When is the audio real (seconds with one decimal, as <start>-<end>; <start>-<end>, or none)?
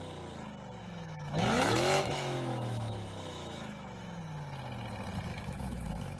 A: 0.0-0.8; 4.2-5.3